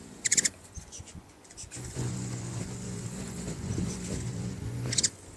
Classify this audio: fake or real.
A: fake